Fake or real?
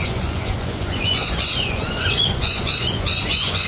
fake